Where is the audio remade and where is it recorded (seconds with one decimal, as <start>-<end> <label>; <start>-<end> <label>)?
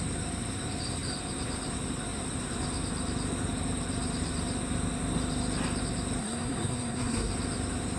0.0-6.2 recorded; 6.2-7.3 remade; 7.3-8.0 recorded